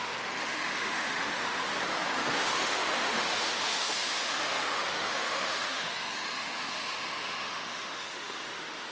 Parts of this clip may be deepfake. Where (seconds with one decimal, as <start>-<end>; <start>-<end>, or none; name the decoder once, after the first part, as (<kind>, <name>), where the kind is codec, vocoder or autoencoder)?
0.0-1.7 (autoencoder, DAC-VAE); 2.3-8.9